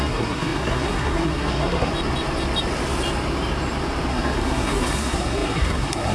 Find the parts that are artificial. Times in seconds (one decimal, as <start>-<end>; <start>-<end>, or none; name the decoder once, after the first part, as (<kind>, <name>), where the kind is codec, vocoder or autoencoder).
0.0-1.9 (codec, SNAC); 4.1-6.1